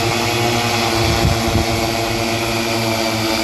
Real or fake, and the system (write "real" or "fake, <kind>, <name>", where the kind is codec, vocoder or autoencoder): real